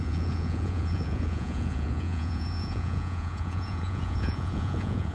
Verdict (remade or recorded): remade